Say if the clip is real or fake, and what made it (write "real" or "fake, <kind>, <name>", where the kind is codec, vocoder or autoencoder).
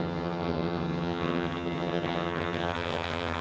fake, vocoder, HiFi-GAN